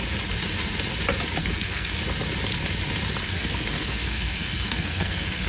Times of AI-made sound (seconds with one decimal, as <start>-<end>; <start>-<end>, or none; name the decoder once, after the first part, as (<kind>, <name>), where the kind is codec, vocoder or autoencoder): 1.4-2.0 (codec, SNAC); 3.2-5.5